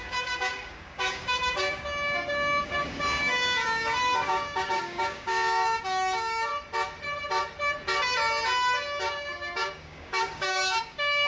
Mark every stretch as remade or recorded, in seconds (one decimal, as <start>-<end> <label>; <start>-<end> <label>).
0.0-6.5 remade; 6.5-9.0 recorded; 9.0-11.3 remade